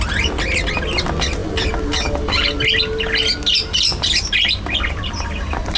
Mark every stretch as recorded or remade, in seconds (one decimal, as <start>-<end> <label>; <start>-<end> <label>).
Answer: 0.0-5.8 recorded